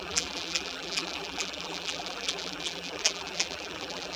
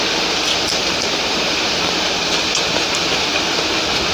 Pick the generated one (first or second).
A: first